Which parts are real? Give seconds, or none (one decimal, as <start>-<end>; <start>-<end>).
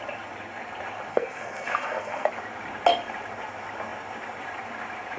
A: 0.0-1.1; 2.3-5.2